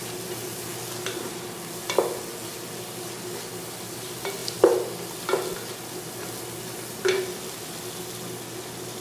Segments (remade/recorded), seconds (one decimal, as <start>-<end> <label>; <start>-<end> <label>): 0.0-9.0 recorded